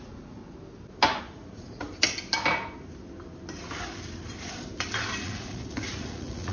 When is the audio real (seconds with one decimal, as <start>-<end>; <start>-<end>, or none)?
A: 0.4-1.2; 1.9-5.2